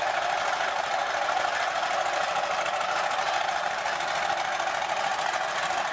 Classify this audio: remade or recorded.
recorded